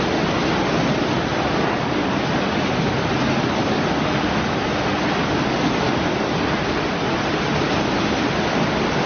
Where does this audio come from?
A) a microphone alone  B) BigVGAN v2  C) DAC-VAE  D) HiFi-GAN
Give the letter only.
A